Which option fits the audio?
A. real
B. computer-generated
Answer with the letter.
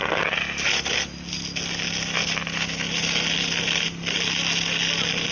A